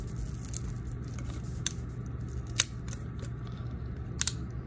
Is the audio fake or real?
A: real